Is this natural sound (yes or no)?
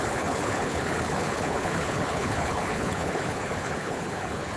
no